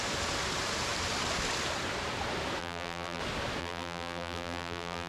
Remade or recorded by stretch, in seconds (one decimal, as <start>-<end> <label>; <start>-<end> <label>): 0.0-2.6 recorded; 2.6-3.2 remade; 3.2-3.6 recorded; 3.6-5.1 remade